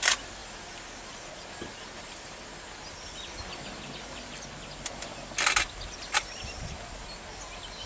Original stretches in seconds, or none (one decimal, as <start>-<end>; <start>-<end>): 0.0-7.9

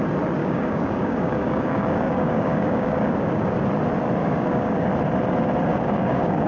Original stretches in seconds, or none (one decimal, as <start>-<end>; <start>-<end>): 0.0-0.4; 3.6-4.2; 4.9-5.7

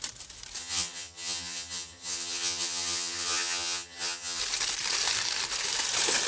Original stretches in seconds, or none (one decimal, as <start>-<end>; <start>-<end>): 0.0-0.6; 4.4-6.3

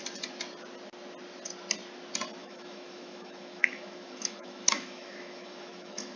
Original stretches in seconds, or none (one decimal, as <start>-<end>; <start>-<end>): 0.0-2.4

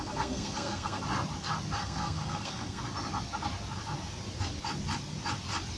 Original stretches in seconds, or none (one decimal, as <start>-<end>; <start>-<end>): 1.0-1.8; 2.8-5.8

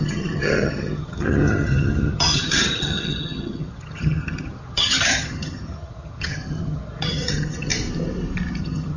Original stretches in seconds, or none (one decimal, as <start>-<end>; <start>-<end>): 7.7-8.6

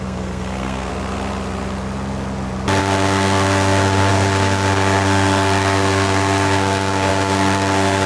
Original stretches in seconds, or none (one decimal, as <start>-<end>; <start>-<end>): 0.9-2.8

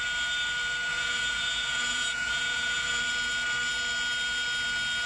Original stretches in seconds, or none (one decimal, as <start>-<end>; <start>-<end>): 0.0-0.9; 3.0-5.1